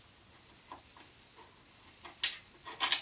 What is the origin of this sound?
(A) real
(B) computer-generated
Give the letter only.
A